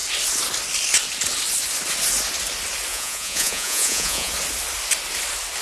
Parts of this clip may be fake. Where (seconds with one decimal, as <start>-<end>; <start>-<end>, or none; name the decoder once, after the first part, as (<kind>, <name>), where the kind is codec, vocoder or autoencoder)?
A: 2.9-4.3 (vocoder, Vocos)